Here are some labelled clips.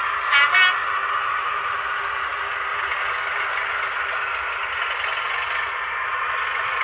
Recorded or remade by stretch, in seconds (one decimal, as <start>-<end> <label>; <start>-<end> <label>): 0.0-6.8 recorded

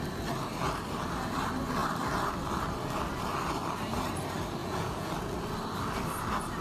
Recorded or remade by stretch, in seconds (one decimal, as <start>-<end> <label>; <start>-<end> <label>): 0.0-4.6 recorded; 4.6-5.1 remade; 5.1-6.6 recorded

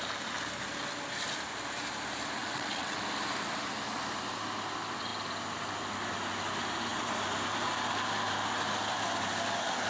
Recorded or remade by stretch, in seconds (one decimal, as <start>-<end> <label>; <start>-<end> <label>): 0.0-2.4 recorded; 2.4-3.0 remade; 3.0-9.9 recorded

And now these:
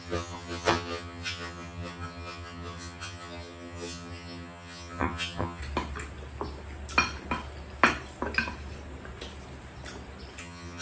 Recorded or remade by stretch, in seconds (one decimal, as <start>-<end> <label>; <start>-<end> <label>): 0.0-5.6 remade; 5.6-10.4 recorded; 10.4-10.8 remade

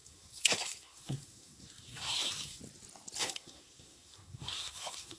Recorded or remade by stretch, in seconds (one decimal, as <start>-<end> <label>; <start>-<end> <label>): 0.0-2.6 remade; 2.6-3.2 recorded; 3.2-5.2 remade

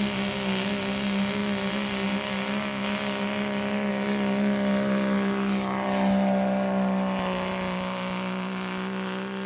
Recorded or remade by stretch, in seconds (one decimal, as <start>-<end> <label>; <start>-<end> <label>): 0.0-9.5 recorded